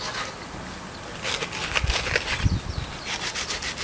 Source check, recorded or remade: recorded